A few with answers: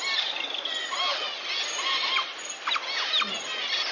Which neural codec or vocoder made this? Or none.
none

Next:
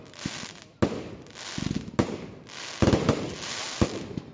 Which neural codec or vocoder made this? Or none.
none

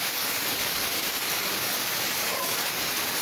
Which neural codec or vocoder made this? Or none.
codec, DAC